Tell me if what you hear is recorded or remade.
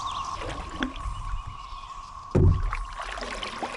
recorded